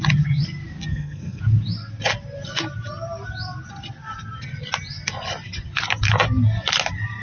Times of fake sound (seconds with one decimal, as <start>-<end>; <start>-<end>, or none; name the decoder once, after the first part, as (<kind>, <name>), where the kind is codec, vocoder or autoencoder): 0.9-1.4 (codec, SNAC)